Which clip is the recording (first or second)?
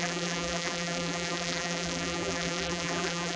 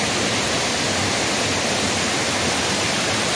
second